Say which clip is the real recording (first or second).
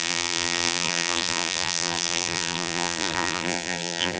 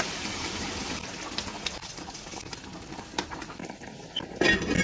second